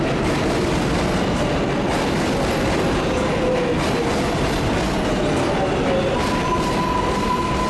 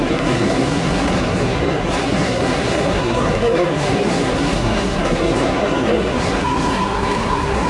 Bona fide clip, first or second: first